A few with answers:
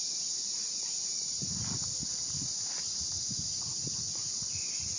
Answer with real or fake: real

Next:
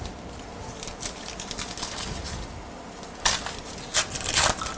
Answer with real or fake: real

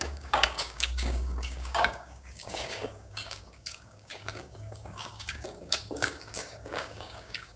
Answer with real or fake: fake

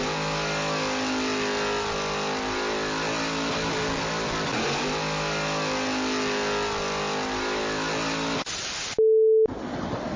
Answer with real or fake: real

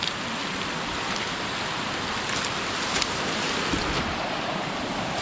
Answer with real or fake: real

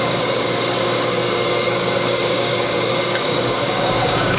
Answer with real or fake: fake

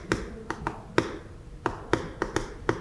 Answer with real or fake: real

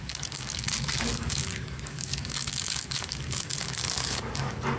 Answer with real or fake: fake